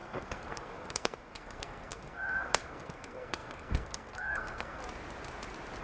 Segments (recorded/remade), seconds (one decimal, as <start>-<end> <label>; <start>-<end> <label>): 0.0-4.8 remade; 4.8-5.8 recorded